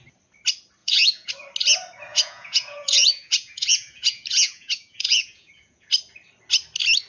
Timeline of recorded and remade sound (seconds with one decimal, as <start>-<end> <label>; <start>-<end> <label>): 0.0-0.8 recorded; 0.8-1.3 remade; 1.3-2.1 recorded; 2.1-5.9 remade; 5.9-7.1 recorded